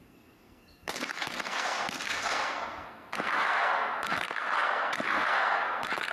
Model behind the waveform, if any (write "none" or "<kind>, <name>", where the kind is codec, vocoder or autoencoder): codec, SNAC